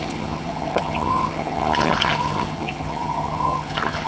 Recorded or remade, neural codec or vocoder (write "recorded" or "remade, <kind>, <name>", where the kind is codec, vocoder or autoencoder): remade, vocoder, HiFi-GAN